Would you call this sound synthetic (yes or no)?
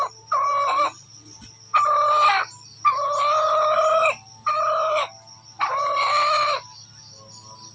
no